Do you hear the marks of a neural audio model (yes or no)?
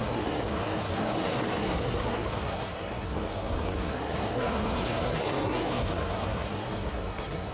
yes